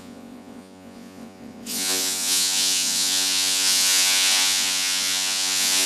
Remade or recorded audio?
remade